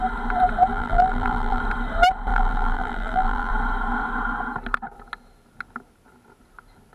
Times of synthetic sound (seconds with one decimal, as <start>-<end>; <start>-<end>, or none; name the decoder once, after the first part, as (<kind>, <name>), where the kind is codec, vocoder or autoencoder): 0.7-1.6 (vocoder, BigVGAN v2); 2.3-3.5